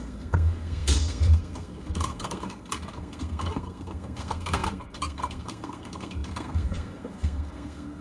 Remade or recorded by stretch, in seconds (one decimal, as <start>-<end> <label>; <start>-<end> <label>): 0.0-8.0 remade